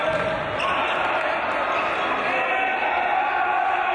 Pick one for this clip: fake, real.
real